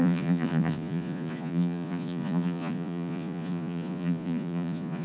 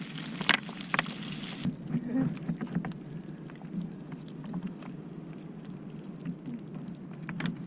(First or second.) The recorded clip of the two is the second